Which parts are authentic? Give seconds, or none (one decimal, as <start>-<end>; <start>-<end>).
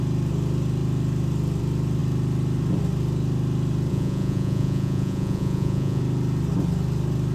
0.0-3.9; 6.0-7.3